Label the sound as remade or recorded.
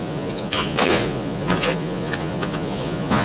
remade